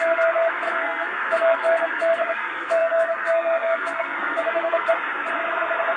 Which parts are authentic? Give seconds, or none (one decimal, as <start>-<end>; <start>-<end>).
4.9-6.0